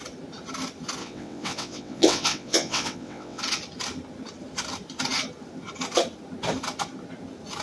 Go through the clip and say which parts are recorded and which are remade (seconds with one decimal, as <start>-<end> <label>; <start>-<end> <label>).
0.0-1.0 recorded; 1.0-3.4 remade; 3.4-7.6 recorded